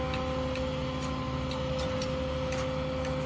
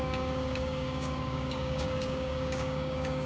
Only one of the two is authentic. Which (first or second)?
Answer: first